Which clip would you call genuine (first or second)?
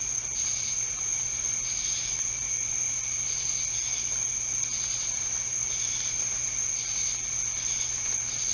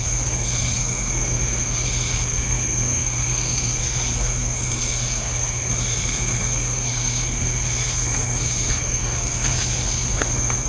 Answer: first